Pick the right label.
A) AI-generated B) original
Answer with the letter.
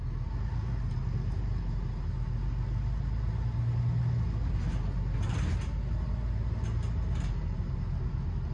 B